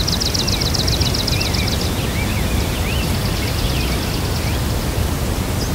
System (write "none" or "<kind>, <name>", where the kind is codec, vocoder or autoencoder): none